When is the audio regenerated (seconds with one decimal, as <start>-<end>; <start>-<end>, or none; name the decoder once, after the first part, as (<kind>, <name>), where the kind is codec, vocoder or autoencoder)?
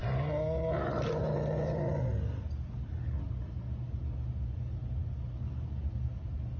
none